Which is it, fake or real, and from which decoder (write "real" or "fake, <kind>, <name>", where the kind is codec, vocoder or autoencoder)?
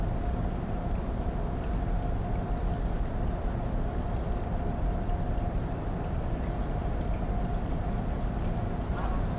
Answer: real